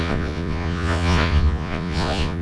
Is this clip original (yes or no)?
no